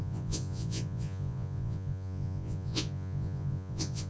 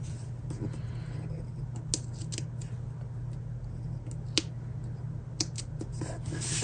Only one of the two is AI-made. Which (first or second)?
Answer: first